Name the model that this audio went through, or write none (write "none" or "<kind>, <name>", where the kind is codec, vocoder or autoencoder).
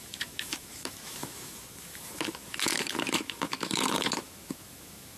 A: autoencoder, DAC-VAE